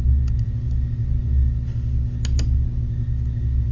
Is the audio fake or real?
real